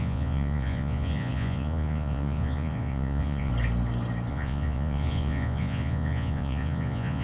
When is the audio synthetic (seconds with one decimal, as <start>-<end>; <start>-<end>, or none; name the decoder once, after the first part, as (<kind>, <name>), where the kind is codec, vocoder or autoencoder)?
0.0-3.5 (vocoder, Vocos); 4.3-7.2